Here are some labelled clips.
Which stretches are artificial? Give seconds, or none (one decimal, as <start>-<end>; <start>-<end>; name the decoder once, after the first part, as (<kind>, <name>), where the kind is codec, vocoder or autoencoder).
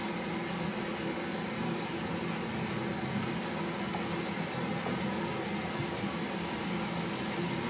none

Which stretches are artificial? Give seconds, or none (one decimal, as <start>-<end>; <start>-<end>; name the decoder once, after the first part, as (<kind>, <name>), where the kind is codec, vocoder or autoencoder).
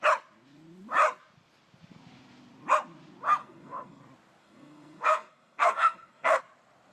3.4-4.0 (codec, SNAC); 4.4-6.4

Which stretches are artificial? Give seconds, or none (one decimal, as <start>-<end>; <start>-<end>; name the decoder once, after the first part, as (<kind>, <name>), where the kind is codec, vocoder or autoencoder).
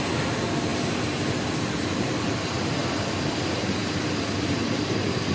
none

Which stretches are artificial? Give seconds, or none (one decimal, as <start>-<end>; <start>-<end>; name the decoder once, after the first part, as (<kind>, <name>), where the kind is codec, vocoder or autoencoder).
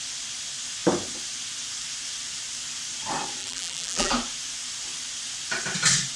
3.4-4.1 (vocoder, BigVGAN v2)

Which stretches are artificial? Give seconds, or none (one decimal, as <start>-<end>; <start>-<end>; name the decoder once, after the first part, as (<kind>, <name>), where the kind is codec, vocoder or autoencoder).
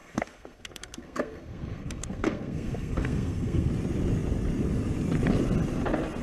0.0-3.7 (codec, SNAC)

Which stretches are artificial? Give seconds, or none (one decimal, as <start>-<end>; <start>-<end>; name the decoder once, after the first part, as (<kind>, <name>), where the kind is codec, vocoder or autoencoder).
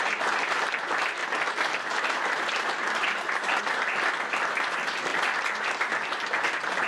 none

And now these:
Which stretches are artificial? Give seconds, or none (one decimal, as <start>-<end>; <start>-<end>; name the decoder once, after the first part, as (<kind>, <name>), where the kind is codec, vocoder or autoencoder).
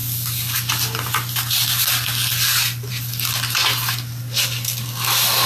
none